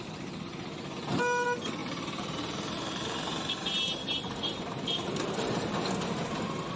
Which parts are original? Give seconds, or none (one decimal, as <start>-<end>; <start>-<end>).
0.0-1.8; 5.9-6.8